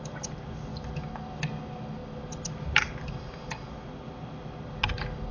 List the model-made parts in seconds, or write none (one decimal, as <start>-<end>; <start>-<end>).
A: none